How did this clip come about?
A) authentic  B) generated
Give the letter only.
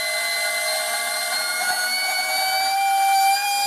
A